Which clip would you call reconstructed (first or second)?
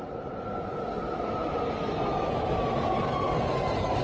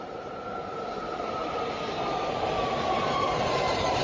second